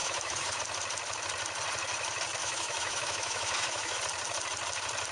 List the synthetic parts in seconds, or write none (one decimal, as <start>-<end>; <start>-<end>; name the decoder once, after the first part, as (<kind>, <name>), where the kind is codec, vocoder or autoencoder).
0.0-0.6 (autoencoder, DAC-VAE); 2.4-4.0